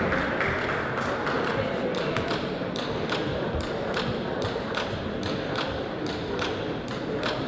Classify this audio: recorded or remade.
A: recorded